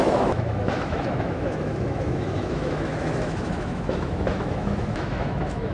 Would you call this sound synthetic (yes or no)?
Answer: yes